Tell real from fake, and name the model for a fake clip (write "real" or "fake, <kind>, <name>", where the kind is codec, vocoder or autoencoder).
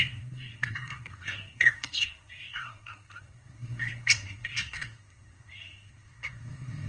fake, codec, SNAC